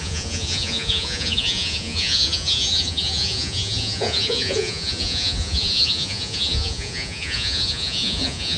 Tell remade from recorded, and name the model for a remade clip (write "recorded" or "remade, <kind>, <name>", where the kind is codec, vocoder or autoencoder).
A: remade, vocoder, Vocos